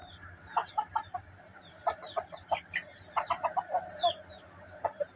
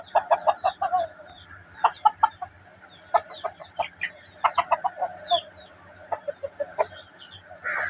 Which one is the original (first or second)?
second